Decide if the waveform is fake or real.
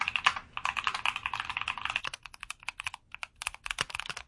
real